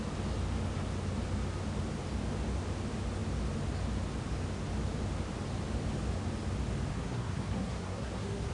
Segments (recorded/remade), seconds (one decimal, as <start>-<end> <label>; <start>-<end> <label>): 0.0-6.9 recorded; 6.9-8.5 remade